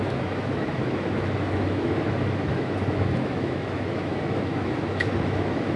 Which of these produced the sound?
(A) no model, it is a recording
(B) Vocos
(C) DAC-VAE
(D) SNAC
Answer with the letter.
C